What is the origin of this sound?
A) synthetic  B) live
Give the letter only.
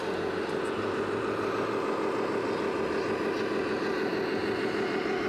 B